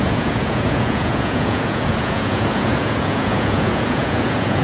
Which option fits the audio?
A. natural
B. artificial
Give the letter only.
B